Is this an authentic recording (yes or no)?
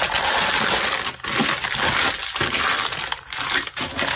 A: yes